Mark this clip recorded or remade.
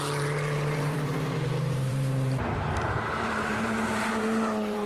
remade